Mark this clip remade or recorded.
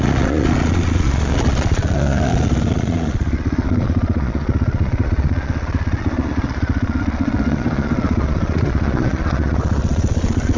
remade